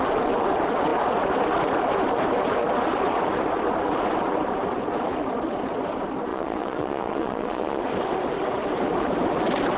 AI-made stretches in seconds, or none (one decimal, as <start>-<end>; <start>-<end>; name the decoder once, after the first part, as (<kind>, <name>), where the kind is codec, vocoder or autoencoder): 6.3-7.8 (vocoder, Vocos)